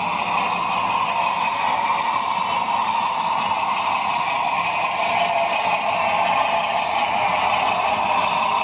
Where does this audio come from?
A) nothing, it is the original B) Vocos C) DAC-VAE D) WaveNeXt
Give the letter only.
A